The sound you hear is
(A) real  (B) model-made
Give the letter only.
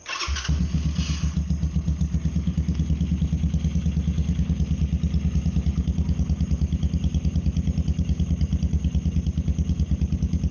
A